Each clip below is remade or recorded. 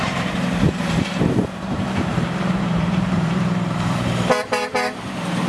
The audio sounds remade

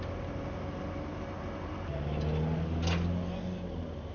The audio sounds recorded